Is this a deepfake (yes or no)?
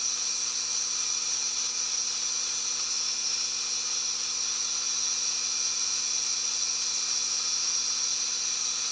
no